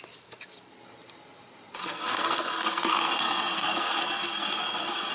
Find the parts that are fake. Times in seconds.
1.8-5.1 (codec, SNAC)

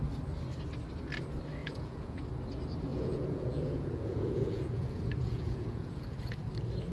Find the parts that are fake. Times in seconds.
1.6-2.2 (vocoder, Vocos); 2.9-6.5

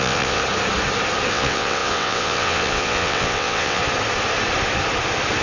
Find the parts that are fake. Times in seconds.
0.0-0.4 (vocoder, WaveNeXt); 1.3-3.8

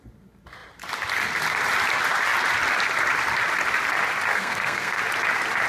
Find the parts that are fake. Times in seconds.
4.3-5.0 (codec, SNAC)

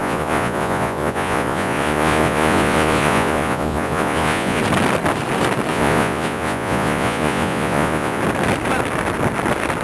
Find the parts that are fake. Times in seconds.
0.0-4.6 (vocoder, Vocos); 5.7-8.2

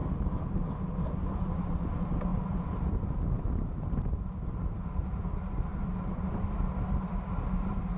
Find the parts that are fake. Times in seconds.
none